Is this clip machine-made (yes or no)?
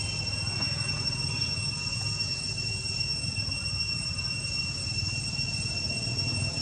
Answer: no